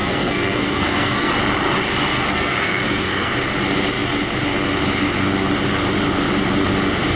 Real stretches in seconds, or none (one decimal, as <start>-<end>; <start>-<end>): 1.3-2.1; 3.3-7.2